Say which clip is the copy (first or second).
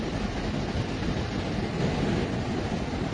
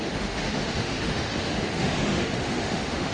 second